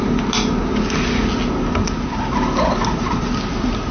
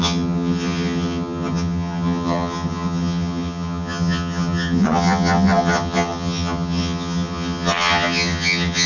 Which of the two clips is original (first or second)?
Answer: first